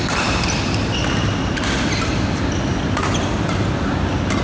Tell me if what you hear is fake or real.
real